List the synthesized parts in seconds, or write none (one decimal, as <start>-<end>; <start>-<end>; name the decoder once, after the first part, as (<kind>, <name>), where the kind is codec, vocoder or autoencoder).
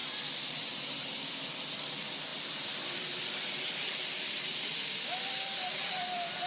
2.3-6.5 (vocoder, BigVGAN v2)